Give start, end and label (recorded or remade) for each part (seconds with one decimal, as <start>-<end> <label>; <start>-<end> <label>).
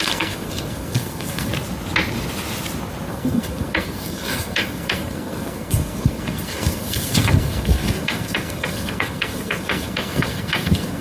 0.0-1.5 remade; 1.5-3.1 recorded; 3.1-11.0 remade